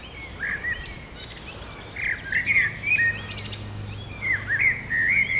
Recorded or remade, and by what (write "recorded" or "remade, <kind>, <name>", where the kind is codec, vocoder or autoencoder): recorded